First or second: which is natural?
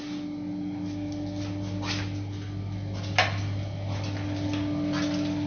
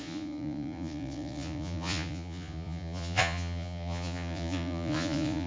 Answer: first